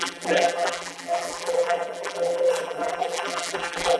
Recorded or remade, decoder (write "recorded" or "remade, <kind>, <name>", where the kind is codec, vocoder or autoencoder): remade, vocoder, BigVGAN v2